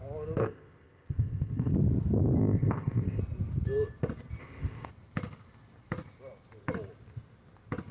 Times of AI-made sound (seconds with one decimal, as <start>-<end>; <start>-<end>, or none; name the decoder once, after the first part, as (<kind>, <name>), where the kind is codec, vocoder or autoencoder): 0.4-1.7 (codec, ZipCodec); 2.4-3.2; 4.4-4.9

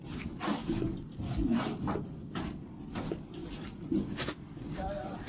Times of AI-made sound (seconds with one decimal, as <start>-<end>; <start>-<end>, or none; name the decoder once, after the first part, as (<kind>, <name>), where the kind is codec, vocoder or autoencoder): 3.4-5.3 (vocoder, BigVGAN v2)

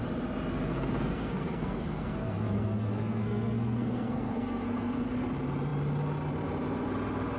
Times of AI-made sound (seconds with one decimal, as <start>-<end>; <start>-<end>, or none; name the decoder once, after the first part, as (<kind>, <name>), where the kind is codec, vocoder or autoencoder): 0.7-5.1 (codec, SNAC)

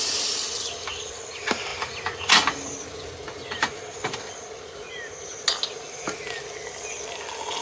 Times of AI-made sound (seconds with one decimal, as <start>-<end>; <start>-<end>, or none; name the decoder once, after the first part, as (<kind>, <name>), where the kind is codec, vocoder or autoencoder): none

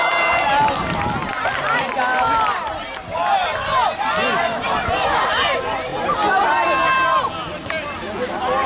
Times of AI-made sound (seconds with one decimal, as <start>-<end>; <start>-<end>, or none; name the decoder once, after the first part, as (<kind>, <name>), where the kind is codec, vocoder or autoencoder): none

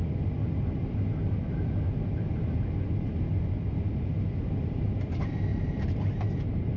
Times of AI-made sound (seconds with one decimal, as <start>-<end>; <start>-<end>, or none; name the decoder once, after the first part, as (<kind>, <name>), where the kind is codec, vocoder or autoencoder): 5.5-6.2 (vocoder, BigVGAN v2)